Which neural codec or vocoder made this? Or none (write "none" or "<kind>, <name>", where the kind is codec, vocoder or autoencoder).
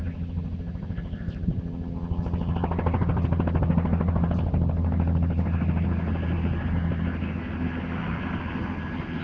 none